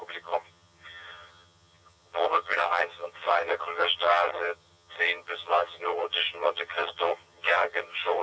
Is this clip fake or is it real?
fake